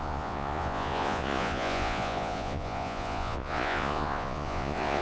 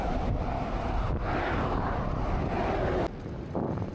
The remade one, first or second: first